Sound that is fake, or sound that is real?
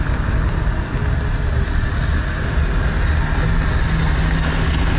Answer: real